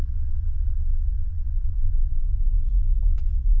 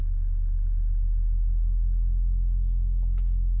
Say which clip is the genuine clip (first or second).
second